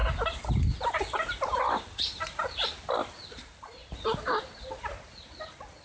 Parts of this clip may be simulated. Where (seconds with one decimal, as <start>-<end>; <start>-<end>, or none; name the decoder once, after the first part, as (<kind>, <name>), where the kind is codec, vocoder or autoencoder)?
none